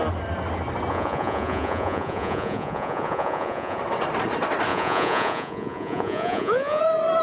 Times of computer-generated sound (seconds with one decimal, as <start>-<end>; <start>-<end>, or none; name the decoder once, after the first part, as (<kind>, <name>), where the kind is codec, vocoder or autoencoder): 0.9-3.8 (vocoder, Vocos); 4.7-6.8

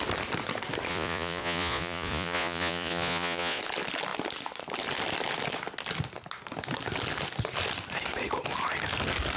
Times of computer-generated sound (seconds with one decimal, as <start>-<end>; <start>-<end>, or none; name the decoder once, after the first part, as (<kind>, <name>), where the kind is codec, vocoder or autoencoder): 0.9-3.6 (vocoder, Vocos)

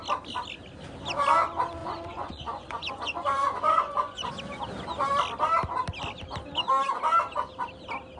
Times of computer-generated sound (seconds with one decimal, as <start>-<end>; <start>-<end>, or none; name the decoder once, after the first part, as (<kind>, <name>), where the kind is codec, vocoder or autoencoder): 1.8-4.3 (vocoder, Vocos)

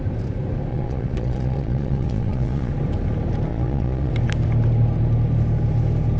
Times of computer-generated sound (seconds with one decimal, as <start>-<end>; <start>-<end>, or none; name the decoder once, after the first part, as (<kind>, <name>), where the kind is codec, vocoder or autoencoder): 0.7-2.7 (vocoder, Vocos); 3.5-4.1

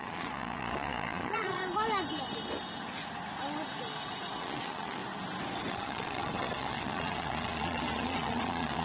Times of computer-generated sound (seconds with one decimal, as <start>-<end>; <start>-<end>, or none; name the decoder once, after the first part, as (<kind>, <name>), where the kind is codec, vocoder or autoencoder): 0.0-1.6 (vocoder, Vocos); 4.4-5.0; 5.7-8.8

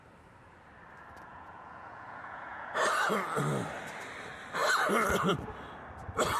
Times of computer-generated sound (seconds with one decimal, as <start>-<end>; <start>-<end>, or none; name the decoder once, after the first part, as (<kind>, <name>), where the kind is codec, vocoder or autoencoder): 1.3-2.7 (vocoder, Vocos)